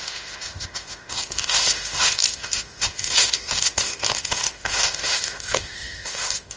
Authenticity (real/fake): fake